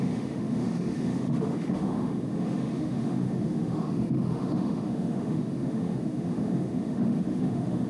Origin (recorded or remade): remade